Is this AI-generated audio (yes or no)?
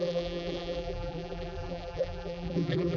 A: yes